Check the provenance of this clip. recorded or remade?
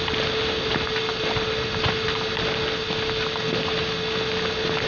recorded